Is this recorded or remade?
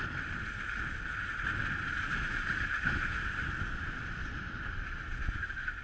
recorded